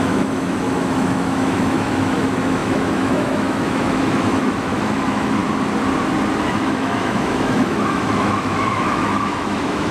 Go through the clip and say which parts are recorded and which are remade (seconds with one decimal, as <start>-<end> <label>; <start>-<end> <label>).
0.0-5.4 remade; 5.4-6.4 recorded; 6.4-9.9 remade

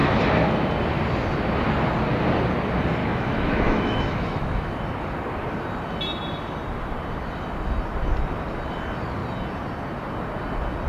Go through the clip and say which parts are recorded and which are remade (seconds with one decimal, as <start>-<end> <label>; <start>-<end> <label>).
0.0-3.0 recorded; 3.0-4.7 remade; 4.7-10.9 recorded

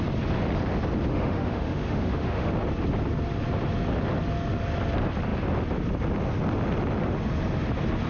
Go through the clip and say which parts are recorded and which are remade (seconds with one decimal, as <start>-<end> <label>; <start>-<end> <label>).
0.0-1.1 recorded; 1.1-2.5 remade; 2.5-8.1 recorded

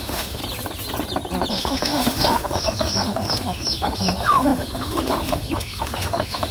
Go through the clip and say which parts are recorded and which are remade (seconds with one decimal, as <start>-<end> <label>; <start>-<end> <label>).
0.0-0.4 remade; 0.4-1.5 recorded; 1.5-6.5 remade

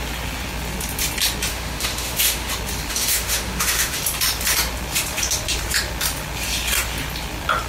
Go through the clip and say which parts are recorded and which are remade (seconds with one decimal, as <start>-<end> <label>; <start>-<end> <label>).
0.0-1.5 recorded; 1.5-2.5 remade; 2.5-2.9 recorded; 2.9-4.0 remade; 4.0-7.7 recorded

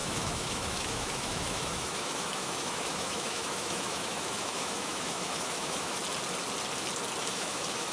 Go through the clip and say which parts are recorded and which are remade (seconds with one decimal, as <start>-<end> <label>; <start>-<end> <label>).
0.0-6.0 remade; 6.0-7.2 recorded; 7.2-7.9 remade